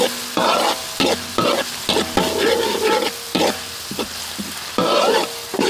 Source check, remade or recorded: recorded